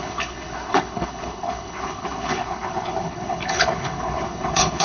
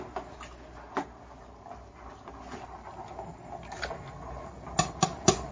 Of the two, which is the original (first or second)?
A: second